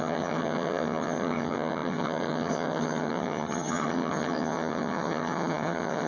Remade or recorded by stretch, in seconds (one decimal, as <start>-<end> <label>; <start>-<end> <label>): 0.0-6.1 remade